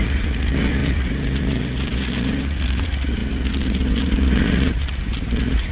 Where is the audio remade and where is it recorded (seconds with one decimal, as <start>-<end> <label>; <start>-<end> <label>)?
0.0-5.7 remade